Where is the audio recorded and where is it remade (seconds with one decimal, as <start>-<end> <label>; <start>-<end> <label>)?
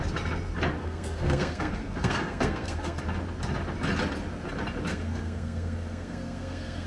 0.0-0.8 recorded; 0.8-3.0 remade; 3.0-4.9 recorded; 4.9-6.9 remade